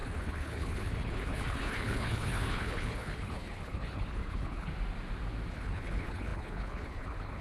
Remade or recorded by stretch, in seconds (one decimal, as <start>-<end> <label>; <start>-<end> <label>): 0.0-4.7 remade; 4.7-5.5 recorded; 5.5-7.4 remade